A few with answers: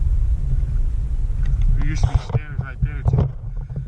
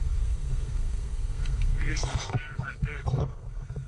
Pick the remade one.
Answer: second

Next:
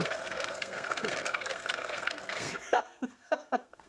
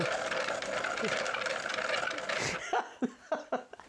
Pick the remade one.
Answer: first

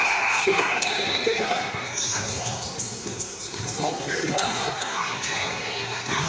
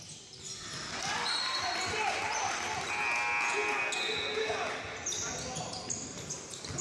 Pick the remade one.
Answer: first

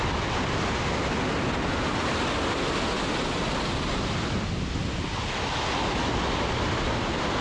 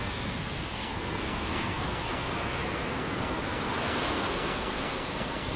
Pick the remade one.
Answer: second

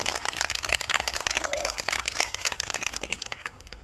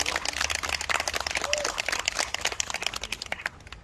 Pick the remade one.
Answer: first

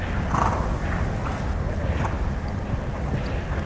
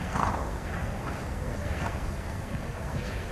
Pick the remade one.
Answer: second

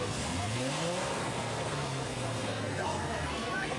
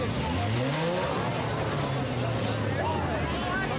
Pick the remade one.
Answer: first